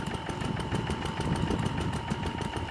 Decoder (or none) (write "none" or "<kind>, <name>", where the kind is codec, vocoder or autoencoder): none